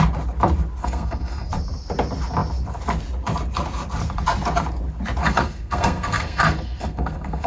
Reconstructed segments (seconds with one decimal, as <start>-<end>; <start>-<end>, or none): 0.8-1.5; 5.2-7.5